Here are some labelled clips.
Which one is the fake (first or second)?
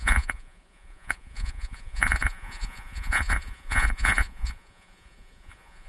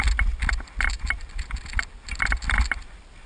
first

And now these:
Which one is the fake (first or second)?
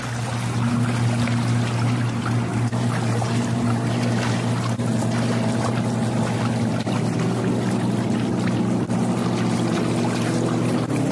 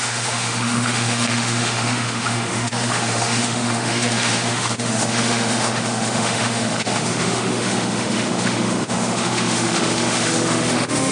second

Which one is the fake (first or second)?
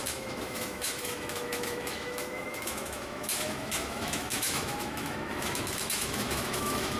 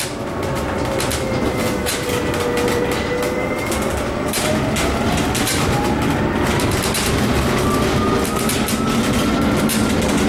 first